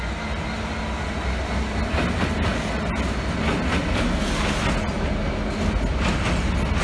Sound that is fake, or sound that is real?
real